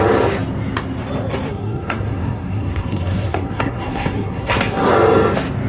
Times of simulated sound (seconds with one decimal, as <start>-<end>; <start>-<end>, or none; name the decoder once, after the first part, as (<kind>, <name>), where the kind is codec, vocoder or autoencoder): 1.5-4.9 (codec, SNAC)